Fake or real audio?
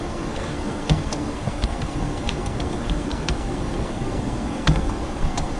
fake